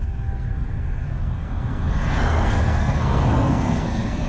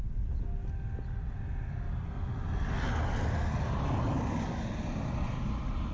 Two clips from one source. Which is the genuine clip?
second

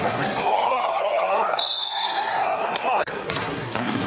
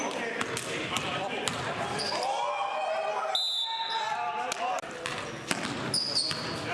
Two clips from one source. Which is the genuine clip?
second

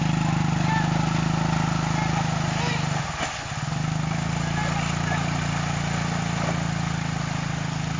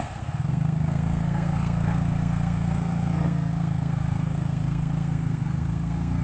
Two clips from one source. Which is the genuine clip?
first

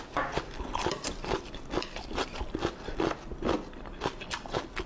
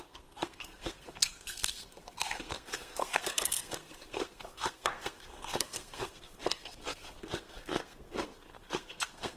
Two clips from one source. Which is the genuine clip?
first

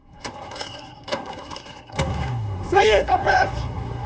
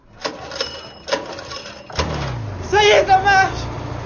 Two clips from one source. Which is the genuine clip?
second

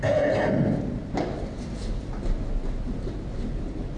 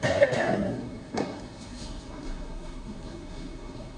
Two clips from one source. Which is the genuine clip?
first